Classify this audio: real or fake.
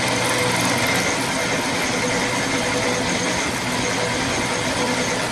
real